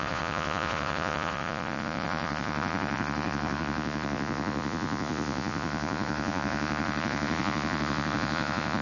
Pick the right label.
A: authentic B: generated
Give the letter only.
B